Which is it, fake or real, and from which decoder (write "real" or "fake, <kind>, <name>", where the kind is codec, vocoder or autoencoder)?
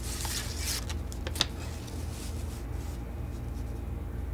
real